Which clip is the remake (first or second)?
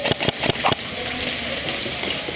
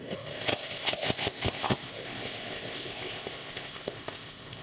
second